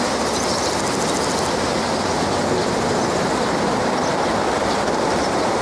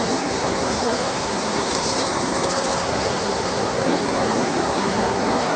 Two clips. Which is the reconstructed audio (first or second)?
second